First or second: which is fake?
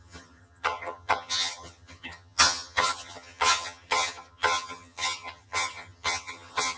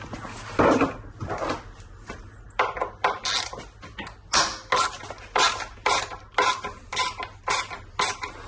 first